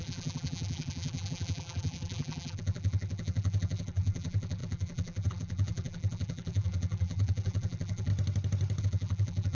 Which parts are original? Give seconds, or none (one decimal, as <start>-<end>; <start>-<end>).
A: 8.1-8.8